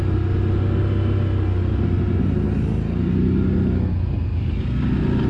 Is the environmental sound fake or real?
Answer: real